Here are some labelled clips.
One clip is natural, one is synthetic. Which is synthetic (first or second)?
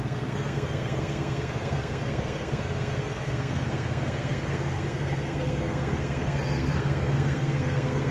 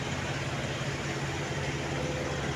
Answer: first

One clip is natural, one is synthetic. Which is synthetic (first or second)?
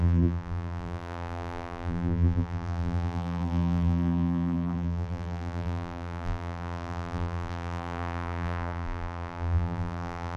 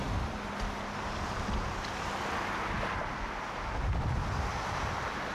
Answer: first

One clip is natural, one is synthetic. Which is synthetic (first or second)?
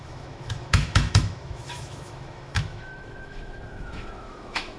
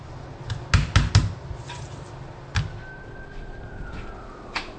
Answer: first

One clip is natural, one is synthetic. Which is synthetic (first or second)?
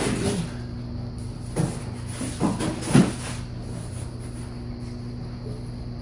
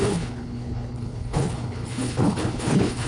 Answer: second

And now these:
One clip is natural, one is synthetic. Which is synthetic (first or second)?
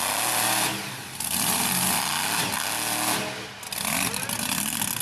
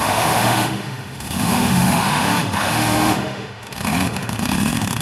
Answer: second